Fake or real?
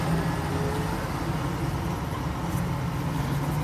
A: real